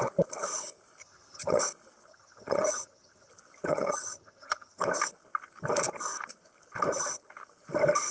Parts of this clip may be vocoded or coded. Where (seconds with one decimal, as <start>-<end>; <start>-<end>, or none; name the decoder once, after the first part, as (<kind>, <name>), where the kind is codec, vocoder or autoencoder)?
1.0-1.6 (vocoder, HiFi-GAN); 2.1-3.3; 3.7-4.8